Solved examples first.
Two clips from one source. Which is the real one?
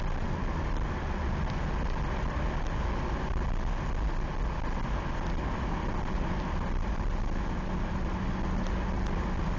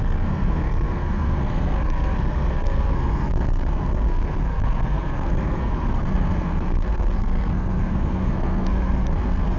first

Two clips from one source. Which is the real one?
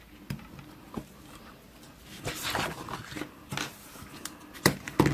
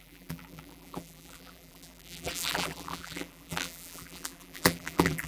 first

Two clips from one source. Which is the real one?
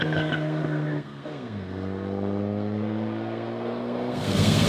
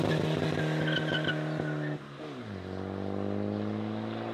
second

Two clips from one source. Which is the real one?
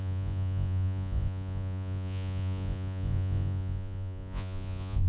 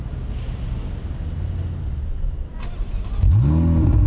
second